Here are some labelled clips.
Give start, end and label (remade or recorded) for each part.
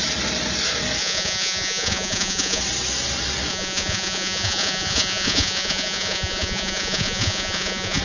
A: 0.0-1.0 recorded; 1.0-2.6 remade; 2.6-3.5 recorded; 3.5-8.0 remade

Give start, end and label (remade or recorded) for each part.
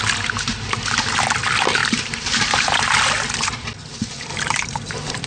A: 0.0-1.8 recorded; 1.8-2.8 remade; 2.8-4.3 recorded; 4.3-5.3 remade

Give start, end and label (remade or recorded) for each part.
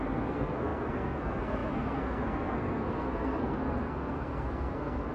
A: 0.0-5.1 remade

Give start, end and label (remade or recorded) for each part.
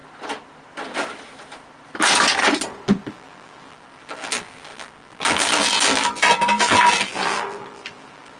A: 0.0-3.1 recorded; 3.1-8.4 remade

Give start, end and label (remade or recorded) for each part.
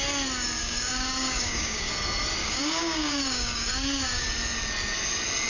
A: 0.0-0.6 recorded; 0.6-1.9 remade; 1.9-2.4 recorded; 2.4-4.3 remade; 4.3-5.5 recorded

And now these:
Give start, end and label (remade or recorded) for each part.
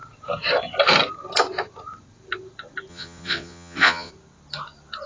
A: 0.0-2.9 recorded; 2.9-4.1 remade; 4.1-5.1 recorded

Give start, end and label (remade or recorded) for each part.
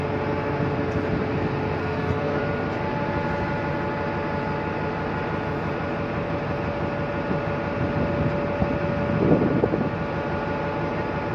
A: 0.0-1.8 recorded; 1.8-2.4 remade; 2.4-11.3 recorded